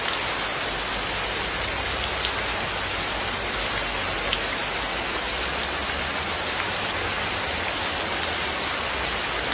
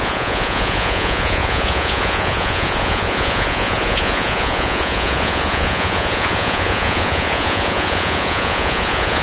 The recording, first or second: first